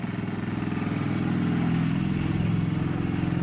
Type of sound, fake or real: real